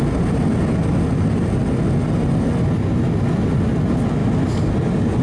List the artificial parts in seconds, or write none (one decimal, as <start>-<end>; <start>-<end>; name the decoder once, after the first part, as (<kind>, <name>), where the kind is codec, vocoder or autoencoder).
none